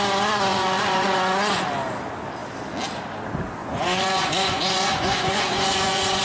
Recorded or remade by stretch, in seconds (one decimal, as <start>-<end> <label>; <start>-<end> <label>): 0.0-0.5 recorded; 0.5-1.6 remade; 1.6-3.6 recorded; 3.6-6.2 remade